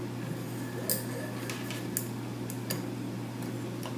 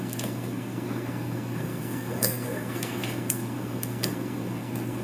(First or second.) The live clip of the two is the first